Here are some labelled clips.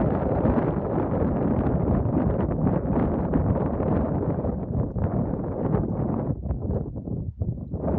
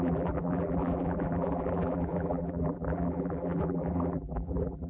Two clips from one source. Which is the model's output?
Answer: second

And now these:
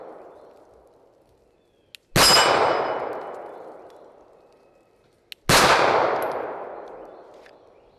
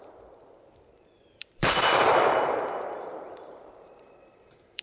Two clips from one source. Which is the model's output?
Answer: second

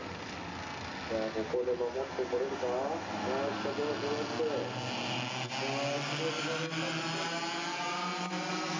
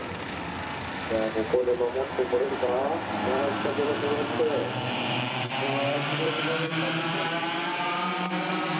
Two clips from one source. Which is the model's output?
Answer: second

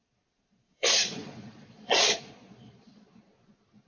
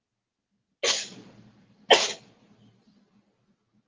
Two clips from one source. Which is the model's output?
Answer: first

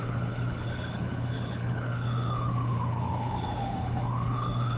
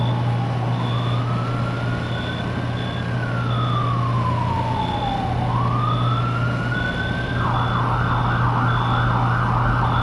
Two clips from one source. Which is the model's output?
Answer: first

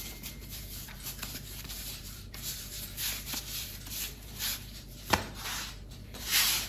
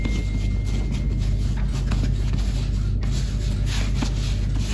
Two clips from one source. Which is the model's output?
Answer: first